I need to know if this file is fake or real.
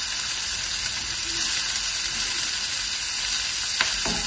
real